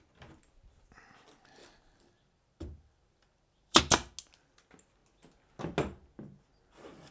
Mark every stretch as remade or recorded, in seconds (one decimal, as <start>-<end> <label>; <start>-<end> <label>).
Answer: 0.0-1.6 recorded; 1.6-3.8 remade; 3.8-7.1 recorded